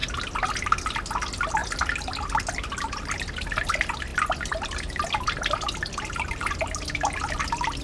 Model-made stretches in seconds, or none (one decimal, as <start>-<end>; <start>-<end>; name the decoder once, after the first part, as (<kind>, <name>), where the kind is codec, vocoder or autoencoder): none

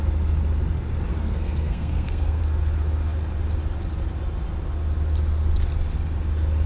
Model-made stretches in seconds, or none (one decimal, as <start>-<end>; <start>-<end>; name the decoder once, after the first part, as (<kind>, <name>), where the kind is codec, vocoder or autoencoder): 1.1-2.4 (codec, SNAC)

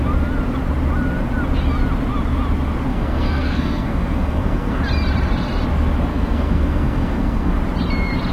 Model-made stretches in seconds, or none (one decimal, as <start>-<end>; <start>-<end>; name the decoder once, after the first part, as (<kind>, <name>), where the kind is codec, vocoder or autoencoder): 2.9-4.8 (codec, SNAC); 6.1-7.5

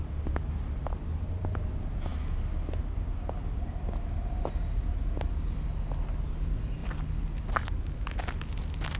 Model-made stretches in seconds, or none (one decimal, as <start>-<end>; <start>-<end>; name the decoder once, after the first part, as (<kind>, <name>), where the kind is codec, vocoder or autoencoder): none

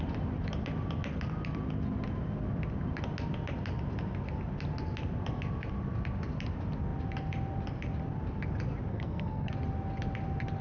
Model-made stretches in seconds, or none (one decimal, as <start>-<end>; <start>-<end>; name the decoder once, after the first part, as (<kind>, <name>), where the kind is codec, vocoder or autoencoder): 8.9-9.5 (codec, SNAC)